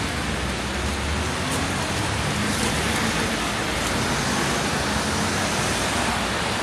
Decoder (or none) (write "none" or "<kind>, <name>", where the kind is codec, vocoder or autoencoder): none